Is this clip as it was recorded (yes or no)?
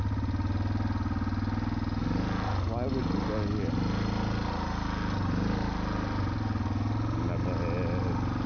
yes